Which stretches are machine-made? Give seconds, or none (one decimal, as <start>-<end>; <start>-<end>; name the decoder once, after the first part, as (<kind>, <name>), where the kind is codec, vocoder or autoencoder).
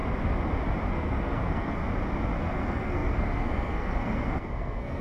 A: 0.9-1.8 (codec, SNAC); 2.4-5.0